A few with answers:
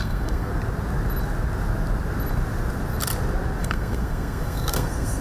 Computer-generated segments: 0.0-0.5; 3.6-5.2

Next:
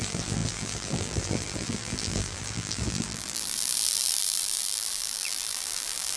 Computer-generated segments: 0.0-6.2